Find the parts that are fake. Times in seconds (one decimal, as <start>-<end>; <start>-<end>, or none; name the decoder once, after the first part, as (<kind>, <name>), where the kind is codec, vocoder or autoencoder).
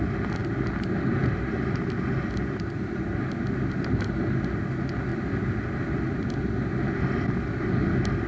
none